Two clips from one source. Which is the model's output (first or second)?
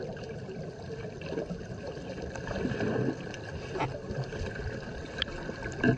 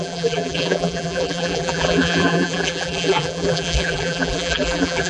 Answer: second